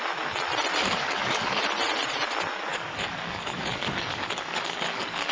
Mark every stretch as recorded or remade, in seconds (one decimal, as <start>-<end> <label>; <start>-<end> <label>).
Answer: 0.0-0.8 recorded; 0.8-1.6 remade; 1.6-2.7 recorded; 2.7-5.3 remade